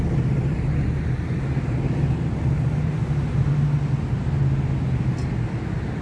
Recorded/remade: recorded